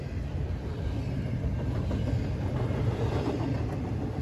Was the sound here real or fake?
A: fake